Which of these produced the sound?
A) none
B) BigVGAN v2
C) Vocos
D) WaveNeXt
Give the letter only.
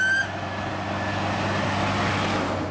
A